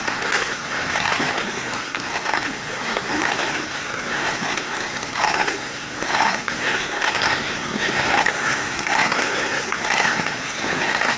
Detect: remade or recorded remade